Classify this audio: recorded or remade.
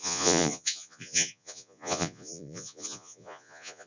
remade